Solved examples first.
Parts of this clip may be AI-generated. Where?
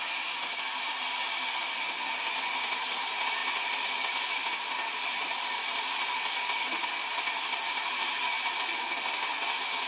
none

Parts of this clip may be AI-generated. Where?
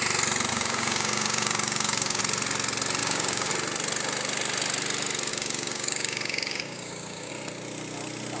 0.5-2.2 (codec, DAC); 3.0-3.5; 5.3-7.3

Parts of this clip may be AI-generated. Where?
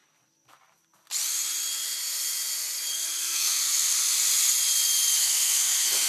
2.9-3.9 (codec, SNAC); 5.2-6.1